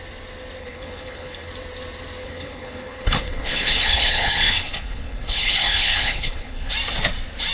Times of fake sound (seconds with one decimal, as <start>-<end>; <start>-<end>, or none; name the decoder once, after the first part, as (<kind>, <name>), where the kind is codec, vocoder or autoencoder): 0.6-1.5 (codec, HILCodec); 2.2-6.7